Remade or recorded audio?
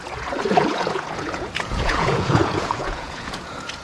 remade